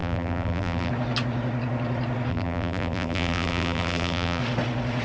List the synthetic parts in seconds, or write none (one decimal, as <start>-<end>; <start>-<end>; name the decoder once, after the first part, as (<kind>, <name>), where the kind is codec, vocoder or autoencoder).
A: 0.0-0.9 (vocoder, BigVGAN v2); 2.3-4.4